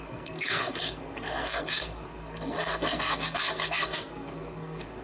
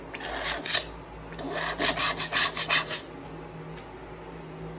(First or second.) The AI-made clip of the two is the first